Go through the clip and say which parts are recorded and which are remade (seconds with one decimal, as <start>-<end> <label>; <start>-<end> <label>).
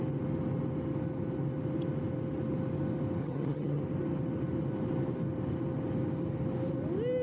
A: 0.0-3.2 recorded; 3.2-3.8 remade; 3.8-7.2 recorded